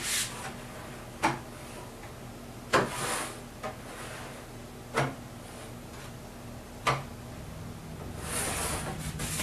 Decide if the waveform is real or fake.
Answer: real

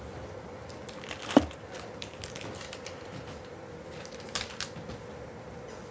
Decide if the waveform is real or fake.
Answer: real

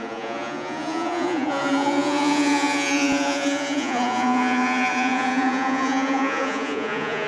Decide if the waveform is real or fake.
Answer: fake